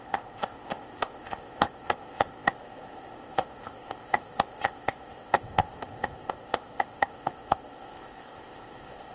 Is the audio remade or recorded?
remade